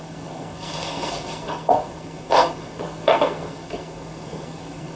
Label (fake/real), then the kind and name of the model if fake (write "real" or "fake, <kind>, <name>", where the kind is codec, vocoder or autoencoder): fake, codec, SNAC